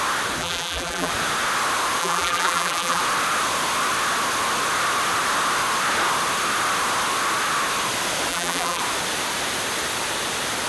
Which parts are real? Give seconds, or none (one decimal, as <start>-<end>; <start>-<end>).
0.0-0.4; 1.1-2.0; 3.0-8.3; 8.8-10.7